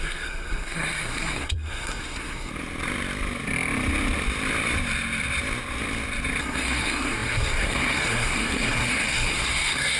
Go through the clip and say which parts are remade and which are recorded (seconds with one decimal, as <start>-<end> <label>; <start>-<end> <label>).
0.0-2.5 remade; 2.5-6.4 recorded; 6.4-10.0 remade